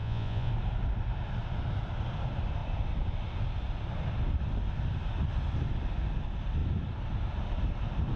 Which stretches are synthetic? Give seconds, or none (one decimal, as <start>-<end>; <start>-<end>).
0.0-0.5